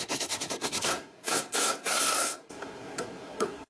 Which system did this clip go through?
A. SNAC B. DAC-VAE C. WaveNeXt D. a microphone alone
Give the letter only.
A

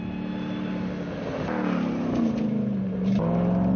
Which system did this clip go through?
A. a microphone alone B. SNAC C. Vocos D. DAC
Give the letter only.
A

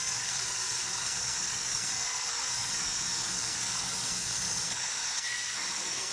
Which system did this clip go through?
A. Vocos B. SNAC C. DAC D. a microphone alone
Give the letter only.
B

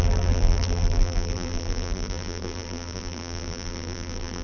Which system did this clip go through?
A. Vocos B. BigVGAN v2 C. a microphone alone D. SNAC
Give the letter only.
B